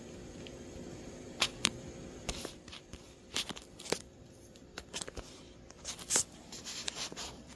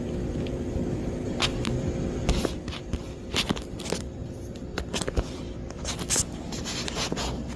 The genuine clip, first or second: second